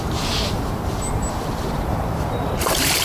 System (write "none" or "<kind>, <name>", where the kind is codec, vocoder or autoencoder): vocoder, BigVGAN v2